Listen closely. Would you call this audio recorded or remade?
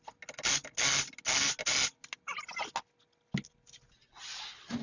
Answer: recorded